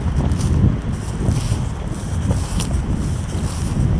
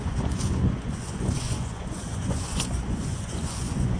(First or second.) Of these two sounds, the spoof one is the second